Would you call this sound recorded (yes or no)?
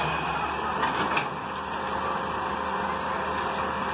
yes